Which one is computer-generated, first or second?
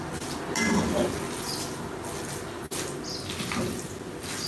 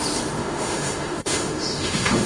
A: second